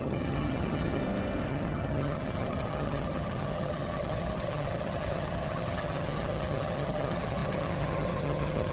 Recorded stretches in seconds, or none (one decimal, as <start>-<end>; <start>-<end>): 1.0-1.5